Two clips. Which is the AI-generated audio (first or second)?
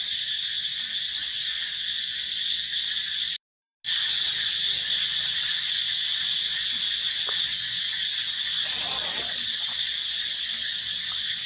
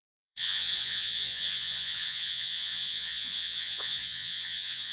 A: second